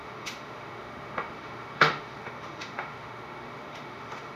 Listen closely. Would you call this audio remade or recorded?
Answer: remade